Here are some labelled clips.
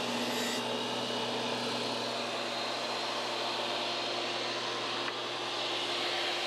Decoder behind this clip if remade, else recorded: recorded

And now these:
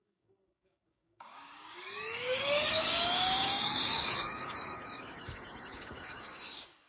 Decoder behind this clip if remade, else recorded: remade, codec, DAC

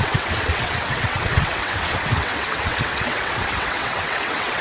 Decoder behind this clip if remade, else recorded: remade, vocoder, WaveNeXt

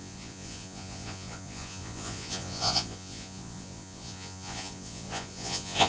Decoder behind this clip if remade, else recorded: remade, vocoder, Vocos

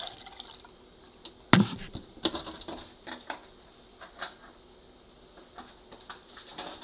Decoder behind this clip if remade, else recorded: recorded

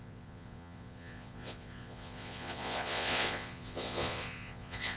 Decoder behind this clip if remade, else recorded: remade, vocoder, Vocos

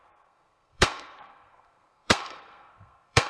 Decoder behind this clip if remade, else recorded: remade, codec, SNAC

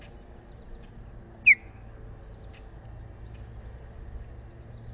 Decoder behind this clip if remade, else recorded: recorded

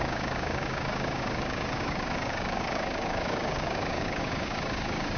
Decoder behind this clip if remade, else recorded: remade, codec, DAC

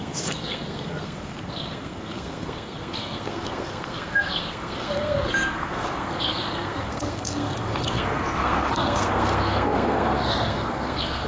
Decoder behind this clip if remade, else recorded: remade, codec, SNAC